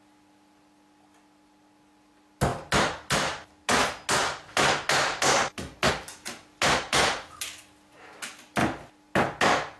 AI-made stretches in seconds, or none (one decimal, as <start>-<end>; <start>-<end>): none